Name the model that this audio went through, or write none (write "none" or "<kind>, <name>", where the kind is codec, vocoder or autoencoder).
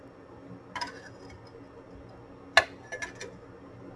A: none